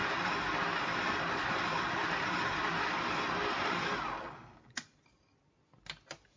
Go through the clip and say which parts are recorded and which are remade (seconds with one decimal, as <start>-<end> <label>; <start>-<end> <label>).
0.0-6.4 recorded